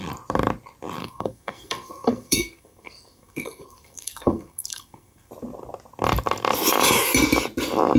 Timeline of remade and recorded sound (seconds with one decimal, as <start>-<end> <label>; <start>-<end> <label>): 0.0-1.0 recorded; 1.0-5.3 remade; 5.3-8.0 recorded